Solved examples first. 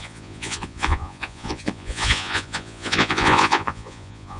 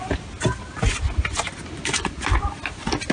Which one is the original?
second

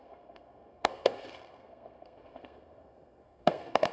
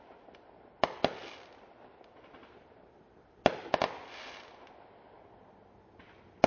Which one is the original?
second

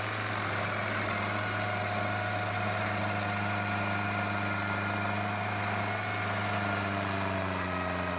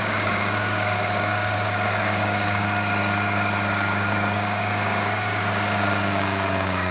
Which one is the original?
first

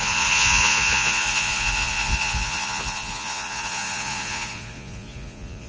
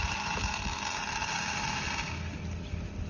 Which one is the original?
second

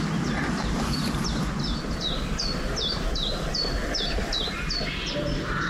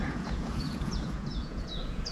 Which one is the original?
first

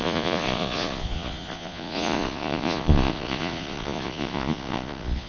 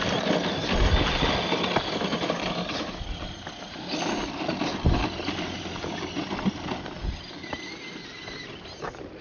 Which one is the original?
second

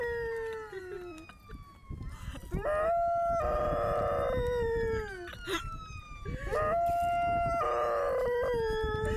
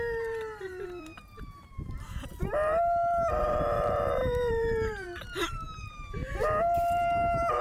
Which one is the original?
first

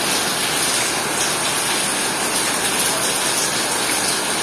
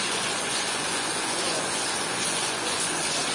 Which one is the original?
first